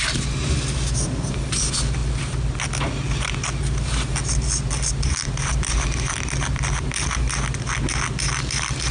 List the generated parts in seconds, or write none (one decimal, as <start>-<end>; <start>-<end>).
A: none